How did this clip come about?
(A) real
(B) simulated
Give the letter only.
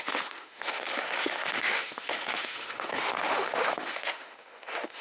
B